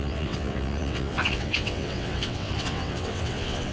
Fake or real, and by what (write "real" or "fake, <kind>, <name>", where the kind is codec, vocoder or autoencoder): fake, vocoder, WaveNeXt